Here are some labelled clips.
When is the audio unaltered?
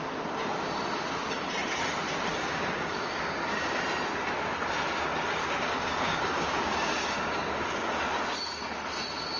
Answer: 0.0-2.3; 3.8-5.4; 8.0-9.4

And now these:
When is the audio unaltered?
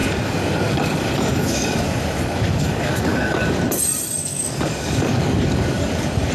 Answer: 3.6-4.2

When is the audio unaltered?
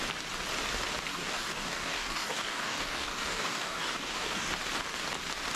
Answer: 0.0-1.1; 4.5-5.6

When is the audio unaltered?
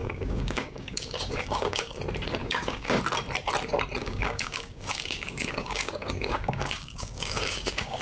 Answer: 2.0-2.4; 3.0-4.0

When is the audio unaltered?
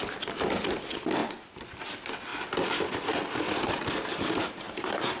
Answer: 0.0-5.2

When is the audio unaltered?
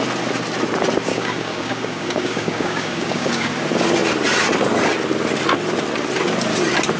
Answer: 0.0-1.1; 3.5-7.0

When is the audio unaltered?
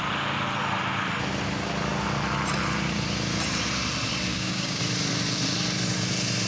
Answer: 0.0-4.3; 4.8-6.5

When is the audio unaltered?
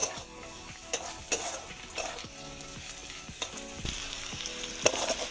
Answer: 1.2-2.2; 3.3-4.0; 4.7-5.3